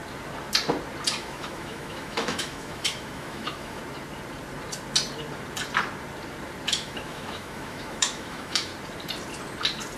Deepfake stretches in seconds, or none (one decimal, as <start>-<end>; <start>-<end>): 1.1-3.8; 6.7-8.7